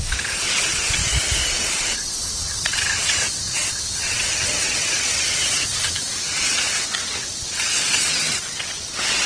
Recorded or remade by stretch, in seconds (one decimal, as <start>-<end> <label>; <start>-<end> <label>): 0.0-1.0 remade; 1.0-1.5 recorded; 1.5-9.3 remade